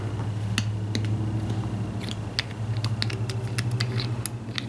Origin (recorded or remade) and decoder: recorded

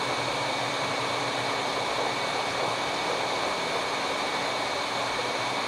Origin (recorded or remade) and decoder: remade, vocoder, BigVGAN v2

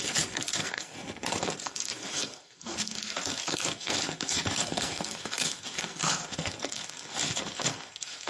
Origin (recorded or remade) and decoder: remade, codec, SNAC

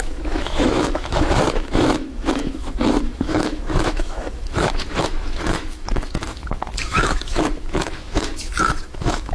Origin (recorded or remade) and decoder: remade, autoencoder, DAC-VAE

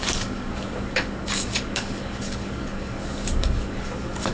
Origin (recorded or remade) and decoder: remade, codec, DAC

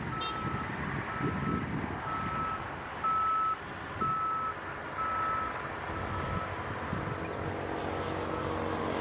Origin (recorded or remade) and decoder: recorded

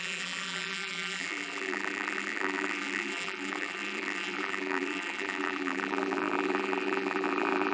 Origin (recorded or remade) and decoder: remade, vocoder, BigVGAN v2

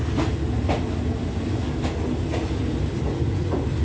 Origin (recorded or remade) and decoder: recorded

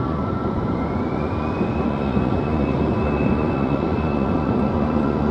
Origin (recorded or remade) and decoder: remade, vocoder, Vocos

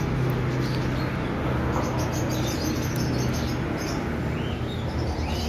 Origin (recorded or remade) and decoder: recorded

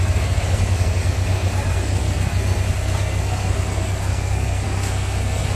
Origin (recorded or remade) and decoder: remade, codec, SNAC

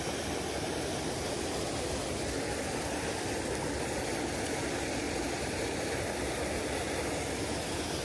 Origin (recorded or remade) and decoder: recorded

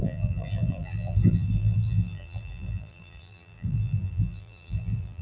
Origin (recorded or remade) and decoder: remade, vocoder, BigVGAN v2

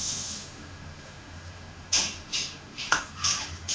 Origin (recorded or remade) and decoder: remade, autoencoder, DAC-VAE